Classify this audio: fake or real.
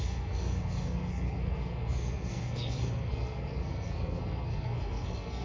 fake